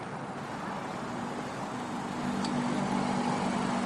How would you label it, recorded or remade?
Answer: recorded